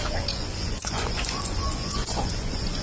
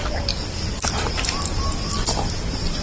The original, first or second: second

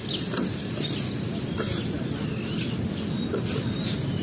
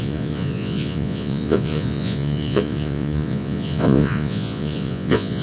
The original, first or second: first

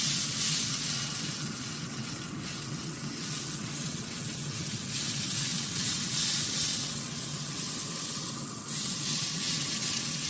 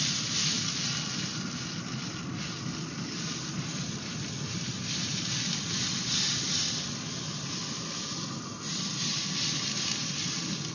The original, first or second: second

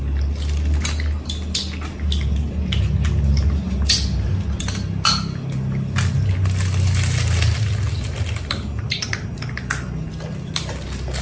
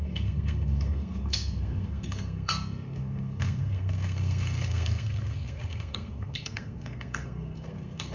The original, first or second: first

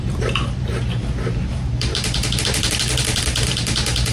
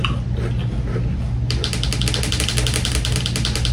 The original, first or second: second